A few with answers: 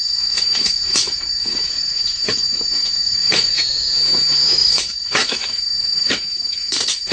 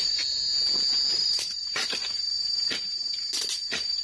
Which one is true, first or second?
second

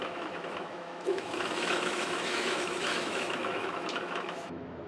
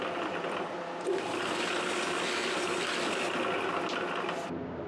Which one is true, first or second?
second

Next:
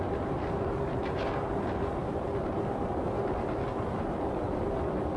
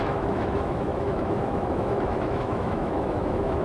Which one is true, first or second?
first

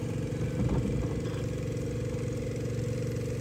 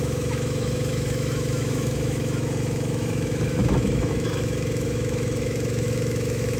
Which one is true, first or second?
first